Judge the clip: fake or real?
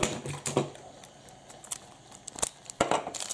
real